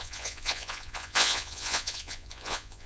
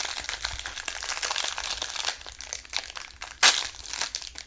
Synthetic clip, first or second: first